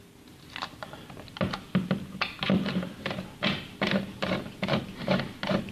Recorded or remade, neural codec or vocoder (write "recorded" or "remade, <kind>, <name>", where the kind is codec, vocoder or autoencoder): recorded